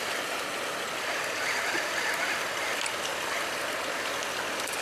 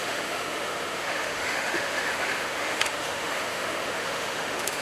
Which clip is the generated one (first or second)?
second